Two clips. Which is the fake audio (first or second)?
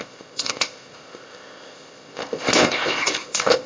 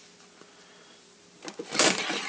first